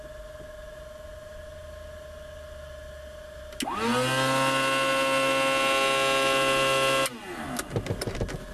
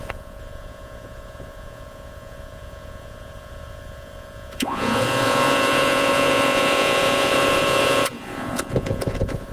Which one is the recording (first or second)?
first